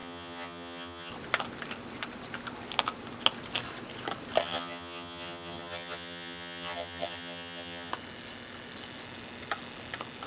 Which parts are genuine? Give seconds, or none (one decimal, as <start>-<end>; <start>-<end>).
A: 1.1-4.4; 7.9-10.3

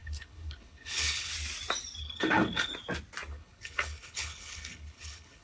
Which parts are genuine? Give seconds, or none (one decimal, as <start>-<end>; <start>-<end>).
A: 1.3-2.0; 2.7-3.3